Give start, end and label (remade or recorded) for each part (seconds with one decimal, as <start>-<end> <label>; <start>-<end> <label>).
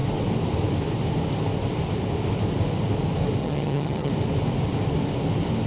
0.0-3.4 recorded; 3.4-4.1 remade; 4.1-5.7 recorded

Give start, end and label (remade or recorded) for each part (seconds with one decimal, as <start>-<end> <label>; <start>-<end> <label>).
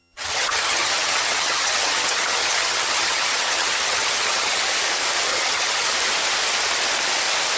0.0-4.6 remade; 4.6-5.3 recorded; 5.3-5.9 remade; 5.9-7.6 recorded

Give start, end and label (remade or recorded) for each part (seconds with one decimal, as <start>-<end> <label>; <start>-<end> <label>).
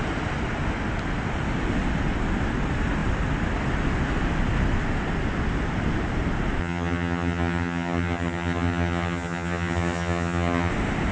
0.0-6.6 recorded; 6.6-10.7 remade; 10.7-11.1 recorded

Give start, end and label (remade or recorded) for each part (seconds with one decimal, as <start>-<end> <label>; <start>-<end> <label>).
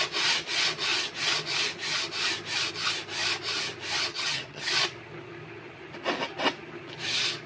0.0-4.1 recorded; 4.1-4.7 remade; 4.7-7.5 recorded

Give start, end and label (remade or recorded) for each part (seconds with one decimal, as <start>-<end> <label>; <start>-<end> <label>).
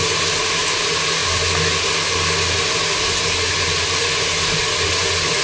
0.0-5.4 recorded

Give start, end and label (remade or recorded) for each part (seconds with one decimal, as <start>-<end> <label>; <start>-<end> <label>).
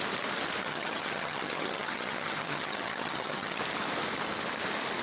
0.0-0.6 recorded; 0.6-3.6 remade; 3.6-5.0 recorded